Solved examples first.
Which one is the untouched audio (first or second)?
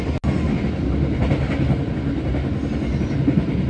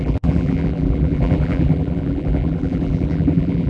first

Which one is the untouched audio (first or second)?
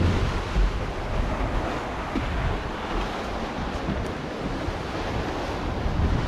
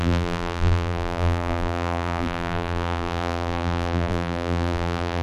first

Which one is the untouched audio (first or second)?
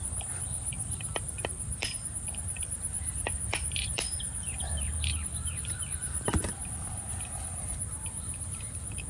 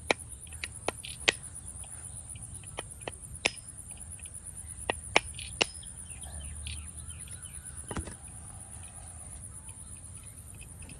second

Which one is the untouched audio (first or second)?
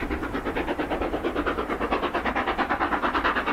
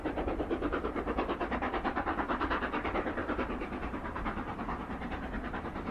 first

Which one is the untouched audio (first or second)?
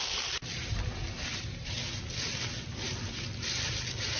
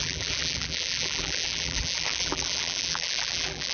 first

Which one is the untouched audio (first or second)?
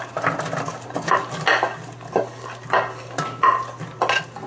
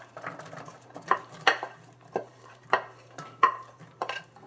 first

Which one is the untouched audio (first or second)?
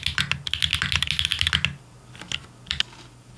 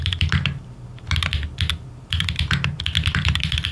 first